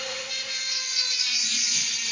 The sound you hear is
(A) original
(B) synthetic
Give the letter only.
B